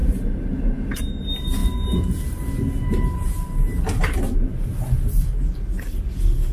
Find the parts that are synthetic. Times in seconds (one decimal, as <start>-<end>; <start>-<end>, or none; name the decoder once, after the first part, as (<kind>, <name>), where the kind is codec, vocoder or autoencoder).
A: 0.0-1.0 (vocoder, BigVGAN v2)